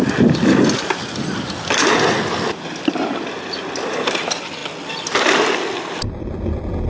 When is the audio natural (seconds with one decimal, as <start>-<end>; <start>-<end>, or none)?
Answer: 0.0-6.9